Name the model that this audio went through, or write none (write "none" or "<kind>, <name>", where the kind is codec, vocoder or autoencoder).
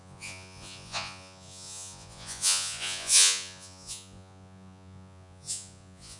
vocoder, Vocos